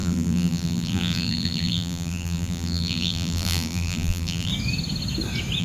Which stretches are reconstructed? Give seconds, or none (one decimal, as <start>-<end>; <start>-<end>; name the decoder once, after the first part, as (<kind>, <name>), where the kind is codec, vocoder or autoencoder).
0.0-4.5 (vocoder, BigVGAN v2)